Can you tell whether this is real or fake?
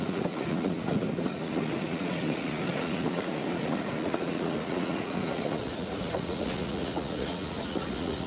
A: fake